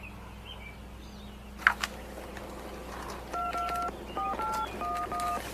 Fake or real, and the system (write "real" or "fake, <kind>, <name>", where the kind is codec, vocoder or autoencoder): real